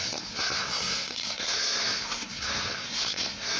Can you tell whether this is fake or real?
fake